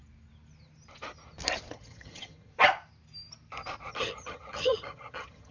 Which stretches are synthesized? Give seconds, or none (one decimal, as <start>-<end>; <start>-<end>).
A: 1.7-2.5; 3.9-5.5